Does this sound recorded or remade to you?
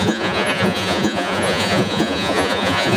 remade